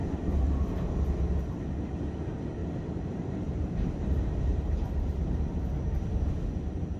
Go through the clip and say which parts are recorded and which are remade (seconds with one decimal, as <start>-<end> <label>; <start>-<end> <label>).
0.0-0.9 remade; 0.9-2.6 recorded; 2.6-5.7 remade; 5.7-7.0 recorded